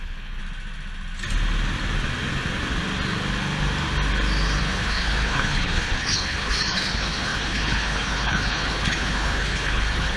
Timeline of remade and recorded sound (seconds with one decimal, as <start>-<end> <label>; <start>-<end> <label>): 0.0-0.4 remade; 0.4-4.6 recorded; 4.6-10.2 remade